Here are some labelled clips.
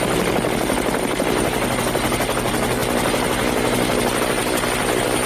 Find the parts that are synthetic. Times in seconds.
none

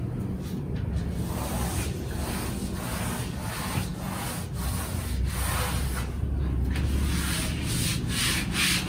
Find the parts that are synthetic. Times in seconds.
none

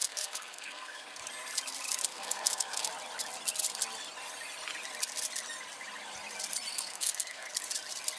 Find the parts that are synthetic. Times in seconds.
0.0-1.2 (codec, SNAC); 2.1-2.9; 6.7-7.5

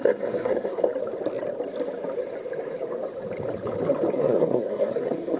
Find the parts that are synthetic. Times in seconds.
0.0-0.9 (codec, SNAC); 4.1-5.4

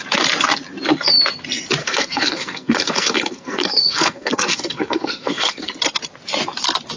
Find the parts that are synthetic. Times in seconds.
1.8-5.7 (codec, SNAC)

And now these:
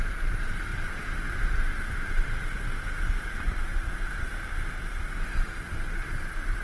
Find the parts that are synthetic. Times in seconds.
none